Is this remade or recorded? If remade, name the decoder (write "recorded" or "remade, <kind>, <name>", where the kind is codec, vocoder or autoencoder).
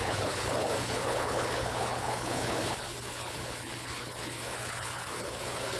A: remade, codec, HILCodec